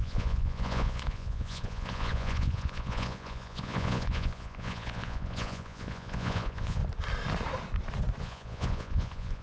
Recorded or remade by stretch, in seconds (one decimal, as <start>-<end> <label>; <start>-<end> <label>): 0.0-6.8 remade; 6.8-8.2 recorded; 8.2-9.4 remade